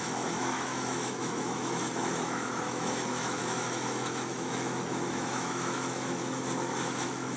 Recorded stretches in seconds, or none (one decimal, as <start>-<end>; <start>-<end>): none